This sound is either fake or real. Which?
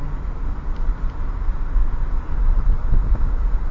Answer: real